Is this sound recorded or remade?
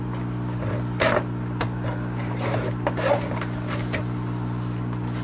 recorded